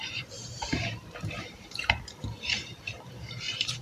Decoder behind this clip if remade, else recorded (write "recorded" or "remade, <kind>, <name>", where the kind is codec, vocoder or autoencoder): remade, vocoder, BigVGAN v2